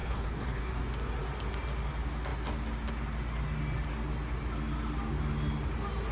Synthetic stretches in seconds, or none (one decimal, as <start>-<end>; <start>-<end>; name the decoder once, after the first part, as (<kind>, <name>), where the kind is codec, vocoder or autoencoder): 0.0-0.7 (codec, HILCodec)